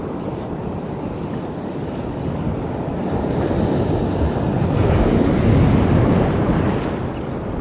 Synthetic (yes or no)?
no